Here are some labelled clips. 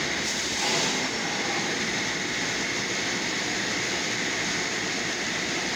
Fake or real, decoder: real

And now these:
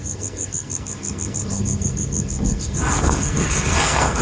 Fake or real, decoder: fake, codec, SNAC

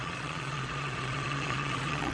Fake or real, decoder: fake, vocoder, Vocos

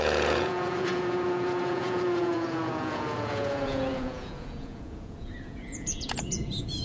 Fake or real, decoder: fake, vocoder, Vocos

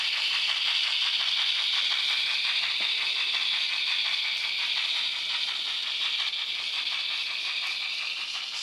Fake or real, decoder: fake, vocoder, BigVGAN v2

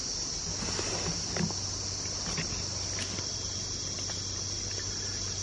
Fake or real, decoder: real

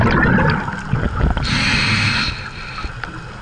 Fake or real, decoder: real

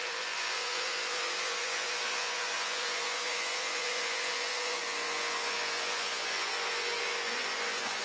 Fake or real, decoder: fake, vocoder, Vocos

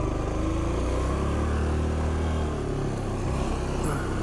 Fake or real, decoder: real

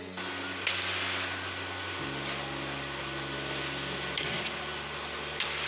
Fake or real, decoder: real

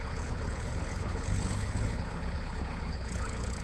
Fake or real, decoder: fake, codec, HILCodec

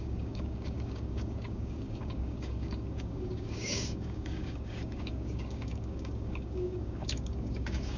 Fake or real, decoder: fake, codec, DAC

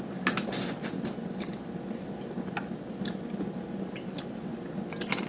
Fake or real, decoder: real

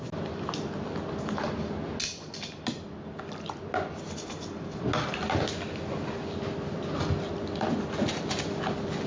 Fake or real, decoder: real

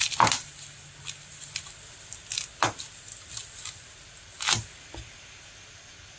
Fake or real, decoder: real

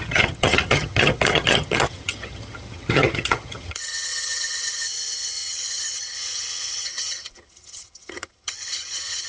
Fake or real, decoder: fake, vocoder, HiFi-GAN